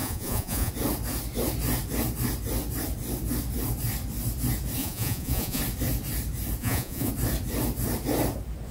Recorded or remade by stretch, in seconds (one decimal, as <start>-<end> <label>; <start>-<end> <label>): 0.0-0.7 remade; 0.7-4.8 recorded; 4.8-5.6 remade; 5.6-6.6 recorded; 6.6-7.1 remade; 7.1-8.7 recorded